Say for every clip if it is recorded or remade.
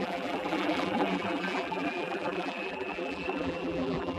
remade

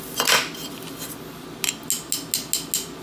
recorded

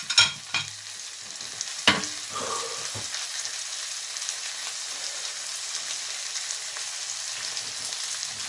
recorded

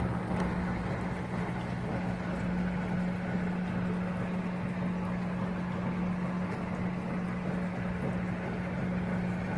recorded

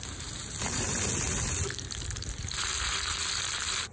remade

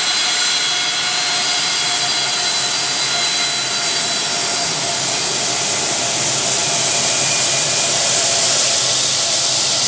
recorded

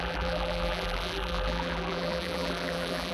remade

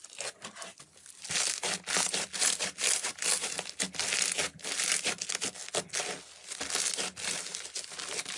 recorded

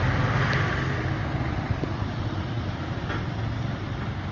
recorded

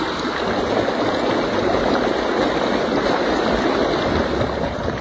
recorded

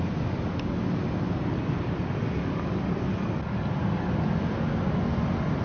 recorded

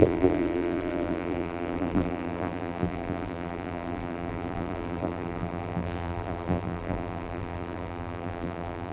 remade